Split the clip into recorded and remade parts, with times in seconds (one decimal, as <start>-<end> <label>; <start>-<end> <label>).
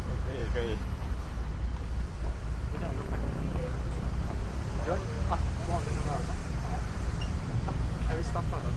0.0-1.7 recorded; 1.7-2.8 remade; 2.8-6.4 recorded; 6.4-8.2 remade; 8.2-8.8 recorded